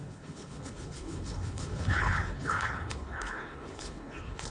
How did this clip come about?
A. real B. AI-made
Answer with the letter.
B